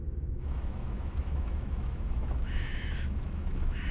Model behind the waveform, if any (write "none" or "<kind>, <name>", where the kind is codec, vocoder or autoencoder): autoencoder, DAC-VAE